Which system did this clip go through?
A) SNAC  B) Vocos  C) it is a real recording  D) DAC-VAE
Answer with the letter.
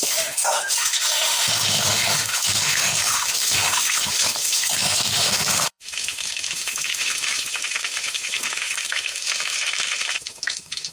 D